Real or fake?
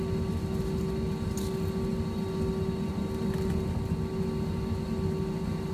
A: real